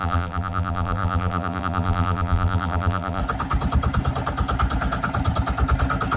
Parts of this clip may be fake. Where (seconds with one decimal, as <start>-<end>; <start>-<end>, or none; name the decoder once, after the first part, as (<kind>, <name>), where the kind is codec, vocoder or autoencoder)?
0.0-3.2 (vocoder, BigVGAN v2)